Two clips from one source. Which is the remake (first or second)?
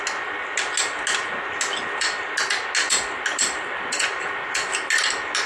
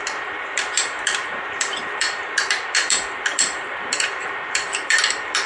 second